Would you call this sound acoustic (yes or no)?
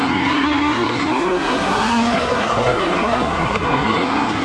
no